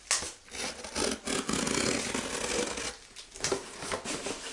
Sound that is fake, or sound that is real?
real